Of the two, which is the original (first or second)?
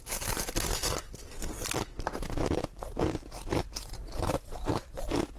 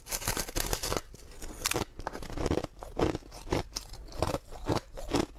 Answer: second